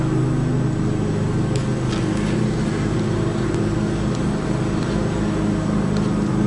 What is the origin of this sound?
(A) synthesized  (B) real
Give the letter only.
B